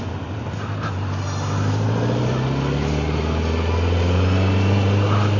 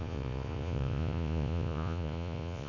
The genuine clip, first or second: first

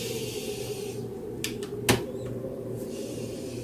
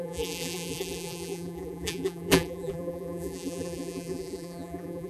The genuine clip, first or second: first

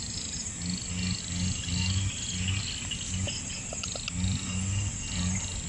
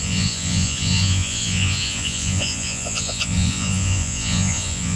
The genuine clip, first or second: first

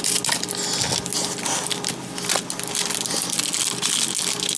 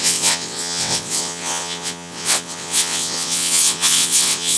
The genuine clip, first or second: first